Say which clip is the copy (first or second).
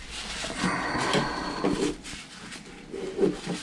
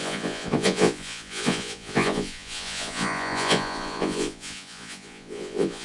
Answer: second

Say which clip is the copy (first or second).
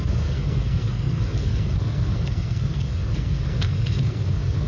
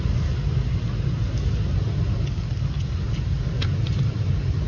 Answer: first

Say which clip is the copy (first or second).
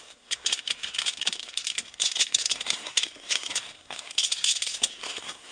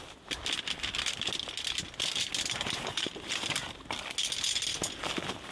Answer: first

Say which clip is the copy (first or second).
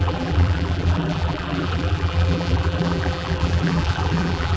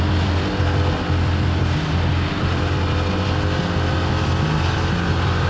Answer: first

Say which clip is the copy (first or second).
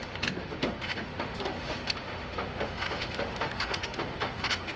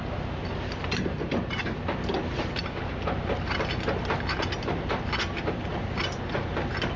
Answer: first